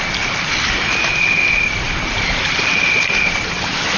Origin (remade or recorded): recorded